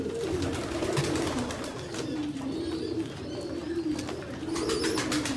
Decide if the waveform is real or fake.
real